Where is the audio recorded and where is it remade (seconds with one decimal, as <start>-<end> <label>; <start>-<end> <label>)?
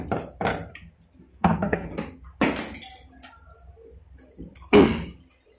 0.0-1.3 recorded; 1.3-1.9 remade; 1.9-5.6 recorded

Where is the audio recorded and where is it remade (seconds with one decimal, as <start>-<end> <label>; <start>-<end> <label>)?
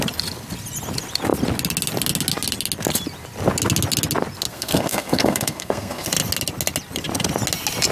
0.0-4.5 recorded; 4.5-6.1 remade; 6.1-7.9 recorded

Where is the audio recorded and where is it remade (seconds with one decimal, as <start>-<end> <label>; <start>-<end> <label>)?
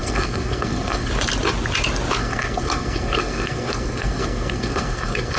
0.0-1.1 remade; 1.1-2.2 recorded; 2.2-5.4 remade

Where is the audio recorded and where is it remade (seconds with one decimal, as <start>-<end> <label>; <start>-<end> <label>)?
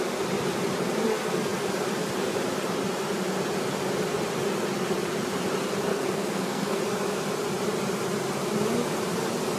0.0-5.9 recorded; 5.9-6.8 remade; 6.8-9.6 recorded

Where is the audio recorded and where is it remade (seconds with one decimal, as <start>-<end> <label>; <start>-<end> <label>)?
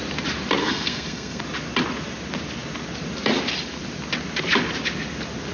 0.0-0.6 recorded; 0.6-1.4 remade; 1.4-5.5 recorded